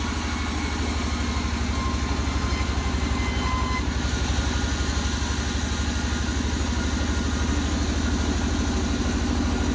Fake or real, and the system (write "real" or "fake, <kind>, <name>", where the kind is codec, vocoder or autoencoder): real